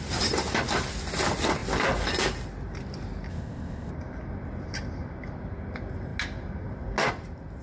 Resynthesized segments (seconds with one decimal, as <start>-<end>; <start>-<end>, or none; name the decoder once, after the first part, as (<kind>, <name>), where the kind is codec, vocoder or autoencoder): 3.3-3.9 (codec, ZipCodec)